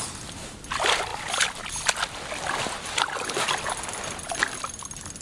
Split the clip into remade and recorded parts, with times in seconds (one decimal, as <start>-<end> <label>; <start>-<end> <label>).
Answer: 0.0-5.2 recorded

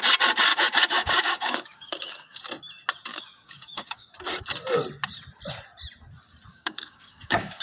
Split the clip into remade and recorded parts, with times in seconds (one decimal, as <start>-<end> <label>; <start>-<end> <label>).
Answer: 0.0-0.5 recorded; 0.5-2.4 remade; 2.4-3.1 recorded; 3.1-4.1 remade; 4.1-6.5 recorded; 6.5-7.6 remade